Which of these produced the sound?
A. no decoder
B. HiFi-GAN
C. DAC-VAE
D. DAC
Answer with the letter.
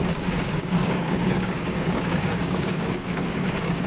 D